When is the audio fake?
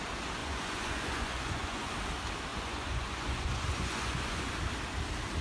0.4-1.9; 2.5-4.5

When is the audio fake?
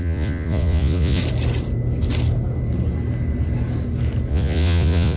0.0-1.2; 4.3-5.2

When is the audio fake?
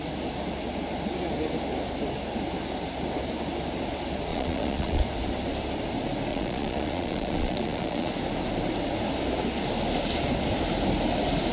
4.3-5.0; 6.3-8.1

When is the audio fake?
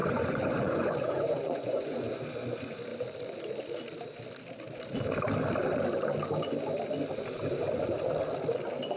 0.0-2.2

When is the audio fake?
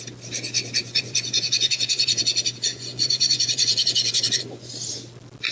0.8-2.2; 2.7-4.7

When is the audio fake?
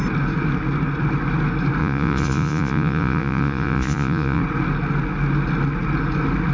1.8-4.4